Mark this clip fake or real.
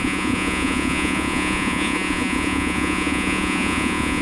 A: fake